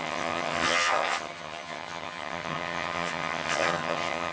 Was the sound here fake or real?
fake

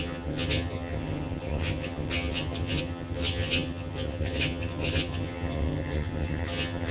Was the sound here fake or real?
fake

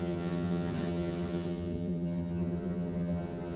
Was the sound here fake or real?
fake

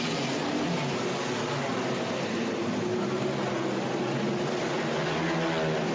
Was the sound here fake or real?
real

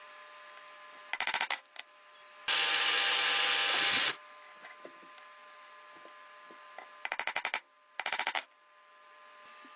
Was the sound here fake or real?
real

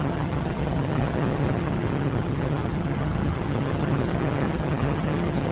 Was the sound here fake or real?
fake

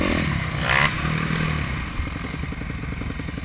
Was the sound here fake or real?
real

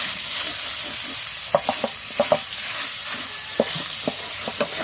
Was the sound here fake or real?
real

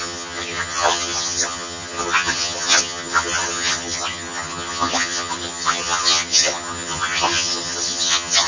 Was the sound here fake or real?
fake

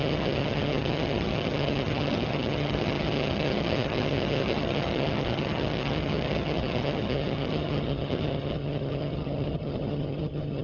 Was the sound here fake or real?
fake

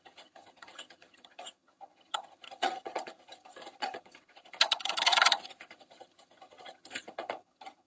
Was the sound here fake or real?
fake